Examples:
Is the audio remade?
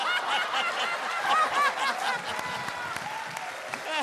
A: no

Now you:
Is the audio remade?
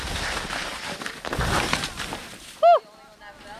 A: no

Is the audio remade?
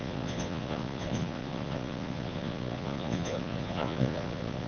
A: yes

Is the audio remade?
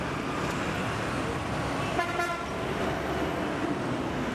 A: no